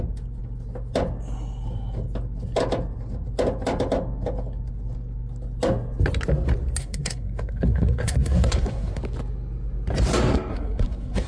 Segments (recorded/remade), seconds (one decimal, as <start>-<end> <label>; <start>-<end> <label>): 0.0-6.8 recorded; 6.8-9.0 remade; 9.0-10.5 recorded; 10.5-11.3 remade